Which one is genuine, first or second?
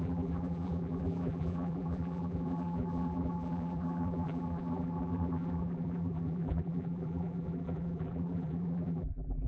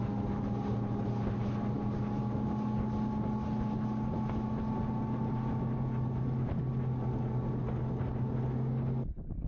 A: second